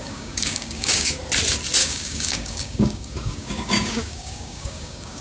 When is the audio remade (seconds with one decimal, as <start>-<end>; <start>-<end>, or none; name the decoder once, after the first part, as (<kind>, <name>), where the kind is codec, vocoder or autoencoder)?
0.0-1.2 (codec, DAC); 1.8-5.2